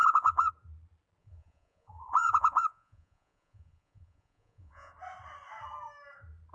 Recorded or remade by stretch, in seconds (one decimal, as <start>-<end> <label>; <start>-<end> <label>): 0.0-0.5 remade; 0.5-1.2 recorded; 1.2-4.9 remade; 4.9-6.5 recorded